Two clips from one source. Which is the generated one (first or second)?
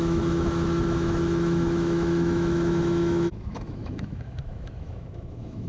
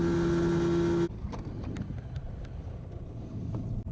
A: first